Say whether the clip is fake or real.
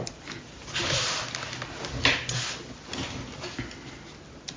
real